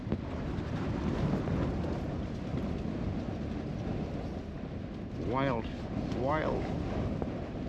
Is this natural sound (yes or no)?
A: yes